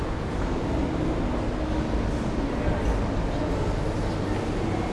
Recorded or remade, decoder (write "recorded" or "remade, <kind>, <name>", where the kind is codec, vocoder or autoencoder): recorded